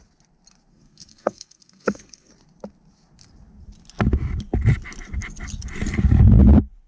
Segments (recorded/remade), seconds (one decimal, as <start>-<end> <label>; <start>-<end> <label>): 0.0-0.7 recorded; 0.7-2.3 remade; 2.3-6.9 recorded